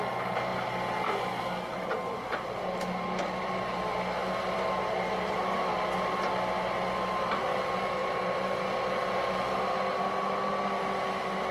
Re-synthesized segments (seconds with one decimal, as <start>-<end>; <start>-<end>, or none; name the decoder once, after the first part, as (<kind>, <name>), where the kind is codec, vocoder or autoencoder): 4.2-5.7 (vocoder, BigVGAN v2); 8.0-8.6